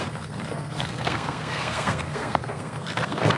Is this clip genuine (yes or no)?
no